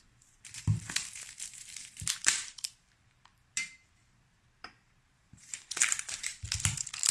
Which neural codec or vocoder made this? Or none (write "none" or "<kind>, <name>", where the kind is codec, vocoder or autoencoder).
vocoder, BigVGAN v2